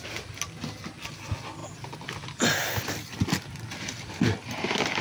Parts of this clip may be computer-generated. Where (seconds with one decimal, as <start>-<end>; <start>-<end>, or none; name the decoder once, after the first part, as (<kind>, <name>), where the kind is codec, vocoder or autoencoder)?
none